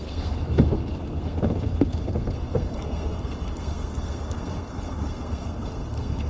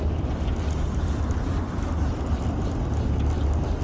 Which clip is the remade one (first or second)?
first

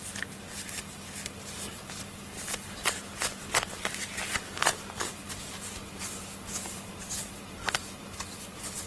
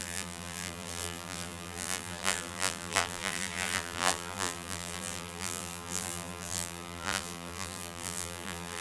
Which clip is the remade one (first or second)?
second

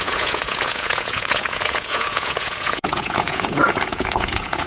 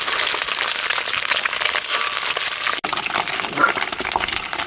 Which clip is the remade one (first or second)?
first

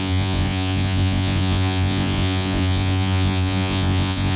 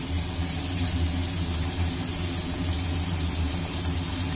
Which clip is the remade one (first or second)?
first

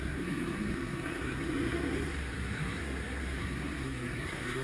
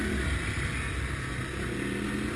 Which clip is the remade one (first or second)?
first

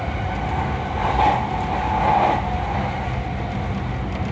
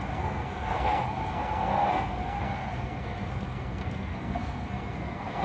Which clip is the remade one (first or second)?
second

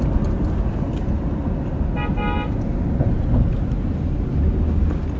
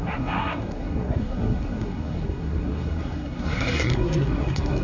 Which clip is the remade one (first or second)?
second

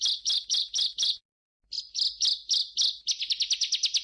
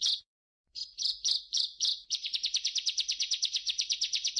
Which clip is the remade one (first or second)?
second